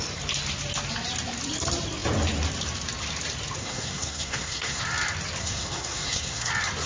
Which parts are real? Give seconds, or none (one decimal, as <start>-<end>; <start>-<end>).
0.0-3.6; 4.8-5.4; 6.5-6.9